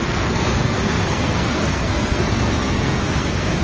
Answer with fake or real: fake